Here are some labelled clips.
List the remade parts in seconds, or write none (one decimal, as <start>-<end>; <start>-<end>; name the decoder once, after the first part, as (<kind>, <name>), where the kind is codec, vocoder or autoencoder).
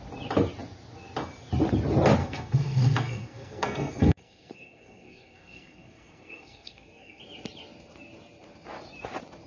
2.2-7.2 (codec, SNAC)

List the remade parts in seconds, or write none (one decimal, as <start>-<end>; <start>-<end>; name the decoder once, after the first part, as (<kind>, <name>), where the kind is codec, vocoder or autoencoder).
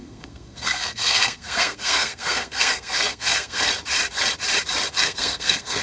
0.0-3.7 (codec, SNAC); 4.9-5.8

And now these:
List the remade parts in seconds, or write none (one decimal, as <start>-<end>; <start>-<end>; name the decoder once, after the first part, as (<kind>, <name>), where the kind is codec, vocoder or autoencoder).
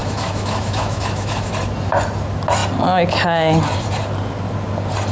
0.0-1.5 (autoencoder, DAC-VAE)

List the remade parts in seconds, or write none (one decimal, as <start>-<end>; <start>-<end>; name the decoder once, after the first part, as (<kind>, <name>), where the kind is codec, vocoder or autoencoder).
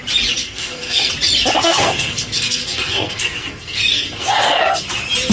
0.4-1.1 (codec, SNAC); 1.6-4.8